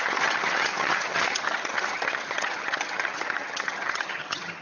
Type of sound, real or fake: fake